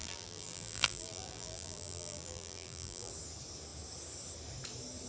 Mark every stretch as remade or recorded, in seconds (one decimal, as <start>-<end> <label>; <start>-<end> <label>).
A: 0.0-3.1 remade; 3.1-5.1 recorded